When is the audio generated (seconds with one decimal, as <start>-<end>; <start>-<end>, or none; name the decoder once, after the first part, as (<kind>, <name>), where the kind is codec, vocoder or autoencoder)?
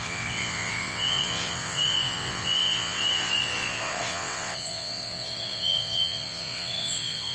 0.0-7.3 (vocoder, WaveNeXt)